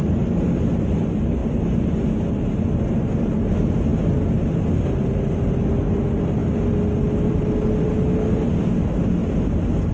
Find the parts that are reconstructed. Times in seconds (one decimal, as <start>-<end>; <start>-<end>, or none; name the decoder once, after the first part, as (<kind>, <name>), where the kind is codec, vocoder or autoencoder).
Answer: none